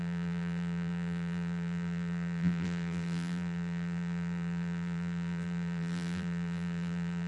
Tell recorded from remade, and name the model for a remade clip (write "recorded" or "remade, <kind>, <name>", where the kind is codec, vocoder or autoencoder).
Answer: remade, vocoder, BigVGAN v2